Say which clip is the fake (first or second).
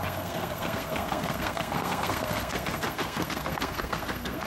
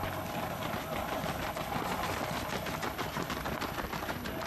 first